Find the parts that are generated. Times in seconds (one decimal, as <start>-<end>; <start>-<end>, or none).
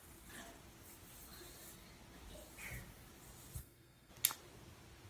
3.6-4.1